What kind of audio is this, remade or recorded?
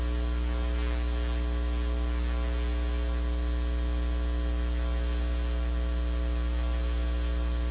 recorded